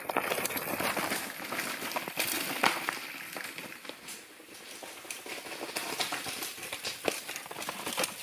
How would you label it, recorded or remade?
recorded